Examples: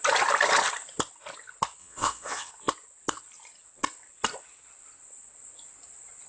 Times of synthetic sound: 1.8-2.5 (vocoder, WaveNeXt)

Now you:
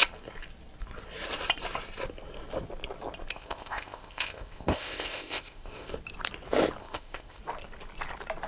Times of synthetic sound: 3.3-5.9 (codec, ZipCodec); 6.8-7.4

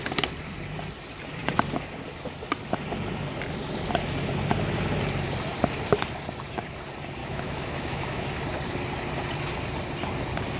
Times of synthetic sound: 7.2-8.4 (autoencoder, DAC-VAE)

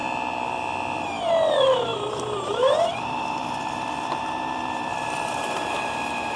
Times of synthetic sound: 1.5-6.4 (vocoder, BigVGAN v2)

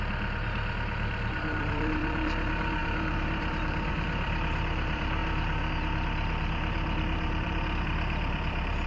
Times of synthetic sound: 0.0-8.9 (vocoder, BigVGAN v2)